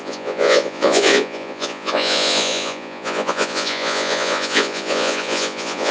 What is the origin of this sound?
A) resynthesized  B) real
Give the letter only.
A